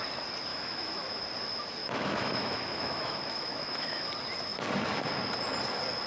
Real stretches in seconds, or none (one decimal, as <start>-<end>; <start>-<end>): 0.0-0.5; 1.2-1.8; 4.1-6.1